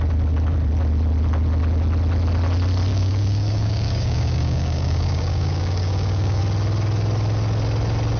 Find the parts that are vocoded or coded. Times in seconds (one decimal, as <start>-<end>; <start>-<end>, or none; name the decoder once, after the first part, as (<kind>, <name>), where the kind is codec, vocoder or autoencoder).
2.9-6.4 (codec, DAC)